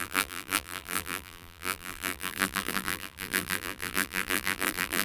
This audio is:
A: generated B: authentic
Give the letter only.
A